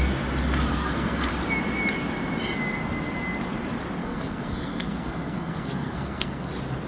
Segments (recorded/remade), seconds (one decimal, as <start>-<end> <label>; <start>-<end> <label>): 0.0-0.7 recorded; 0.7-1.3 remade; 1.3-4.0 recorded; 4.0-6.5 remade; 6.5-6.9 recorded